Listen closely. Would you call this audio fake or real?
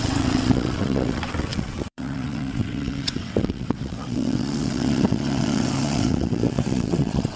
fake